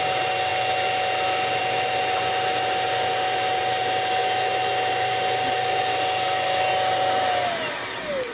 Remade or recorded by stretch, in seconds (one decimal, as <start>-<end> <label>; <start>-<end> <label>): 0.0-8.3 recorded